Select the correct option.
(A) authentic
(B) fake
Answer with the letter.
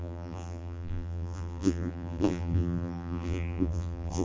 B